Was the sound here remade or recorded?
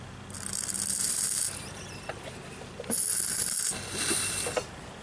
recorded